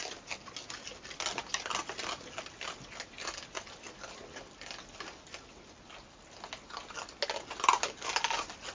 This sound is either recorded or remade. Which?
recorded